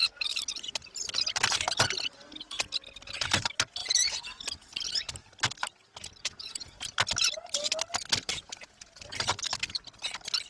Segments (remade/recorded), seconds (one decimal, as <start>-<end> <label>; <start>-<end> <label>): 0.0-3.8 recorded; 3.8-4.4 remade; 4.4-6.0 recorded; 6.0-6.8 remade; 6.8-8.3 recorded; 8.3-8.9 remade; 8.9-10.5 recorded